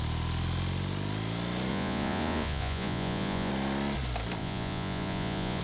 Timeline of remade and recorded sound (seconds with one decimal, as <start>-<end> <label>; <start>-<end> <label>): 0.0-1.7 recorded; 1.7-3.5 remade; 3.5-4.4 recorded; 4.4-5.6 remade